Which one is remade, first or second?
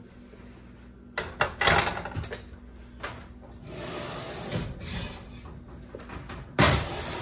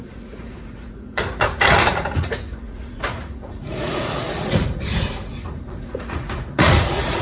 second